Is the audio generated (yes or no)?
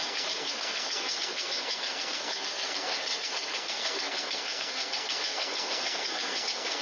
yes